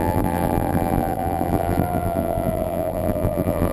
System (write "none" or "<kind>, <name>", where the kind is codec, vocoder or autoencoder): vocoder, BigVGAN v2